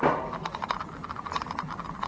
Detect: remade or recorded recorded